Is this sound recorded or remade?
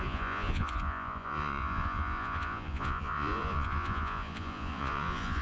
remade